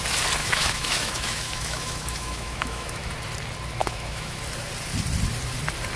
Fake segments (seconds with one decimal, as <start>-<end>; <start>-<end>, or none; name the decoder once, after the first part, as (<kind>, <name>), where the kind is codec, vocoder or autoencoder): 0.4-3.1 (autoencoder, DAC-VAE); 3.8-4.4